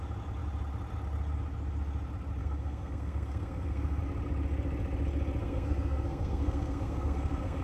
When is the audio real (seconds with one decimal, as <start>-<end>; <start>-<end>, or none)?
0.0-2.4; 4.0-5.4